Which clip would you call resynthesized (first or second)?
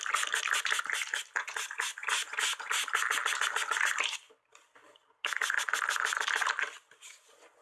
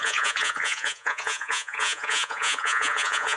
second